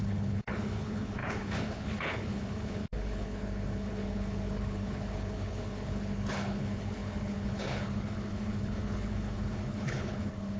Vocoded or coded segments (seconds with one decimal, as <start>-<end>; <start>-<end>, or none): 0.0-10.6